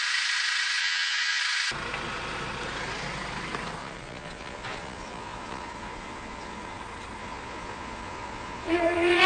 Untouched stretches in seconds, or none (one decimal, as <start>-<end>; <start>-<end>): 0.0-0.8; 1.4-3.8; 6.8-7.2